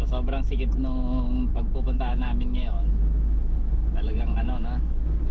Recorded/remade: remade